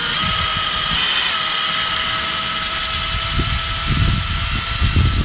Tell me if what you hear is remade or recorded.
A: recorded